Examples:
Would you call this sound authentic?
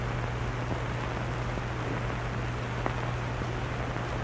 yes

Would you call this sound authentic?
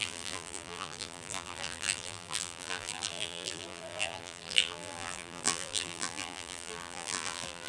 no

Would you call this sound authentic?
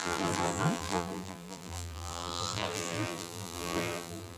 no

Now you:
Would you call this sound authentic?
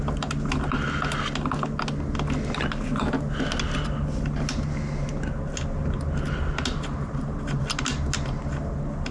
yes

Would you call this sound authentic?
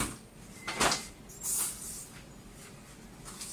yes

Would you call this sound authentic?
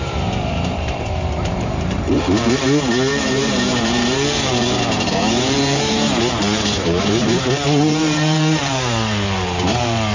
no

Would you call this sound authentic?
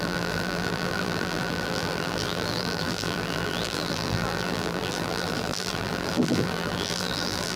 no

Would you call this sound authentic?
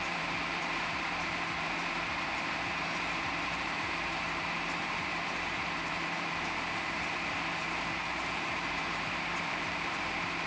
no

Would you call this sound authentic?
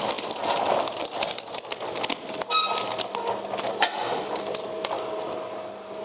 yes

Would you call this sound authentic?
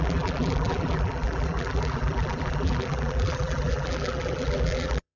no